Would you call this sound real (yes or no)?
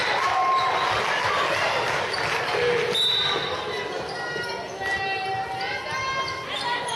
yes